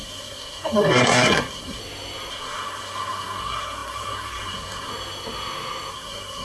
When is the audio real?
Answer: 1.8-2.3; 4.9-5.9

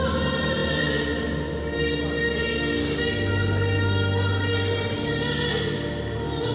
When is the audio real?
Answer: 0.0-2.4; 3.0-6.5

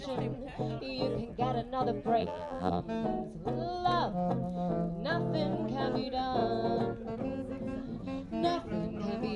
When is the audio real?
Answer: 0.0-2.2; 2.8-9.4

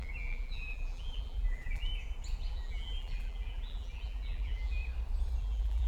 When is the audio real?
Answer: 1.9-2.5; 4.8-5.4

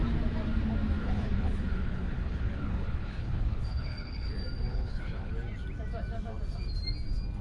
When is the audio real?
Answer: 0.0-1.0; 4.3-4.7; 5.3-7.4

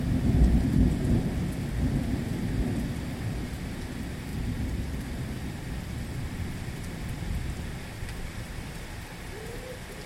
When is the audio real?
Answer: 0.0-4.3; 5.0-10.1

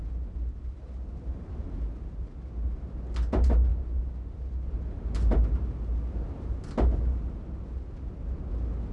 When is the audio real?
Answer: 0.0-8.9